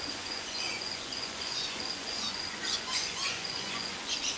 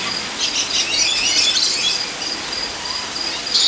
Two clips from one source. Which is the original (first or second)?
second